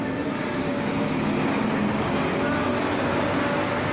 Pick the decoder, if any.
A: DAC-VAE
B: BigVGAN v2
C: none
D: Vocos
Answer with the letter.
C